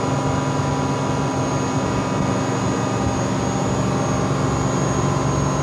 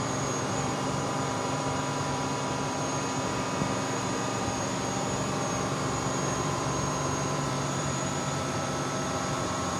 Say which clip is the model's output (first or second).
second